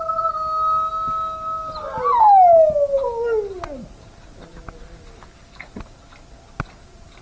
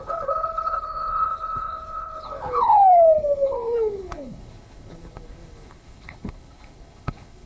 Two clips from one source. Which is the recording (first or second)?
first